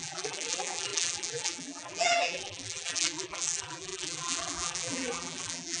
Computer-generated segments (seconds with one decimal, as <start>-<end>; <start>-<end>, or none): 0.0-5.8